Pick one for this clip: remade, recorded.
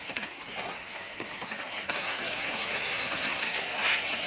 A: remade